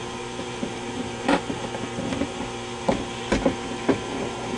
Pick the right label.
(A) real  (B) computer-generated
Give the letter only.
B